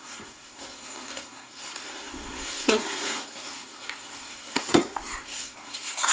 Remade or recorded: remade